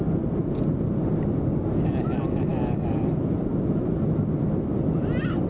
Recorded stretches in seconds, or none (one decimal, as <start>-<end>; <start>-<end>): 0.0-5.5